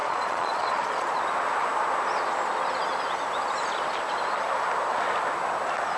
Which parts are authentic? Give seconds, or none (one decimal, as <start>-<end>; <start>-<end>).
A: 1.2-6.0